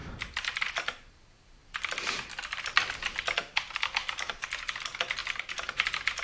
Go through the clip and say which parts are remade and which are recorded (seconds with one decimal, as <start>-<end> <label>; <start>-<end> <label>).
0.0-0.6 remade; 0.6-1.6 recorded; 1.6-2.6 remade; 2.6-4.0 recorded; 4.0-4.6 remade; 4.6-6.2 recorded